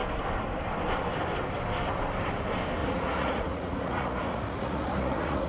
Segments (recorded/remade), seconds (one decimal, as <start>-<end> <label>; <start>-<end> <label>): 0.0-2.8 recorded; 2.8-5.5 remade